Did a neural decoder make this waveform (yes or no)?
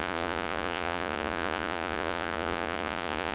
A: yes